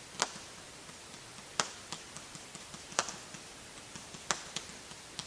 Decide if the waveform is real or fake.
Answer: real